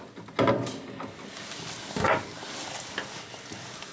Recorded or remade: recorded